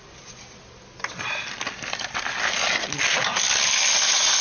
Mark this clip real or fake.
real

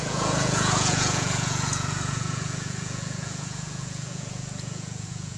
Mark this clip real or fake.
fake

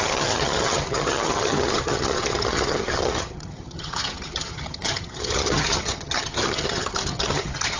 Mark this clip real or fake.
fake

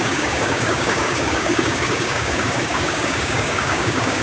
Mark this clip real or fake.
fake